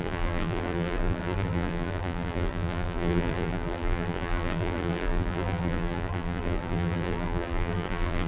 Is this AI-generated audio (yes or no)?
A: yes